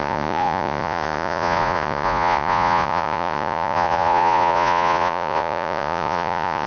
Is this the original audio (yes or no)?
no